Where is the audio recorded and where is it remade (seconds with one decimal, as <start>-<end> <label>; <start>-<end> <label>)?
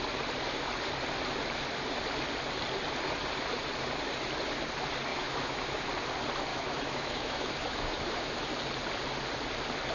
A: 0.0-5.1 recorded; 5.1-5.9 remade; 5.9-6.5 recorded; 6.5-8.3 remade; 8.3-9.9 recorded